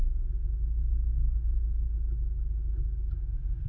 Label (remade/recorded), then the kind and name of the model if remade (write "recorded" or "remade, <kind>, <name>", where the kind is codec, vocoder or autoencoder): recorded